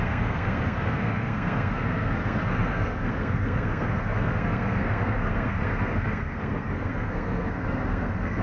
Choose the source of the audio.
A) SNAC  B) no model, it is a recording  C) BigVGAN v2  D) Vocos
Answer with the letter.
A